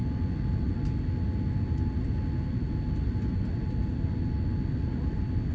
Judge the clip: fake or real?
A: real